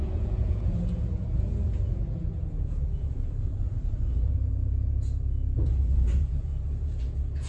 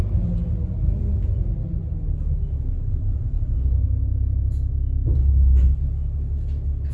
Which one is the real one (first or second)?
second